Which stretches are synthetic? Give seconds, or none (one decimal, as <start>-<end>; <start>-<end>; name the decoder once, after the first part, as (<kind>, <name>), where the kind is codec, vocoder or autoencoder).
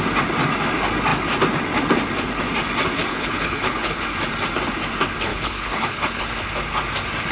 3.1-4.0 (codec, HILCodec); 5.3-6.2